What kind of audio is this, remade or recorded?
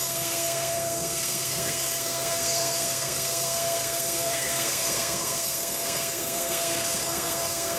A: remade